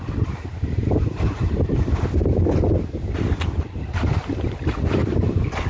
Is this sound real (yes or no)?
yes